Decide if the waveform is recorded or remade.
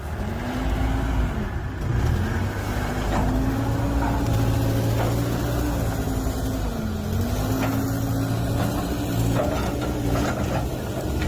recorded